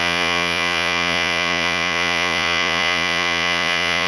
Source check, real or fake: fake